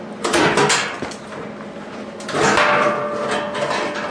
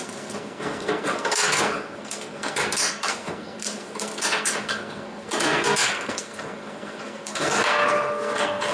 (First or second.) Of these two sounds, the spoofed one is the second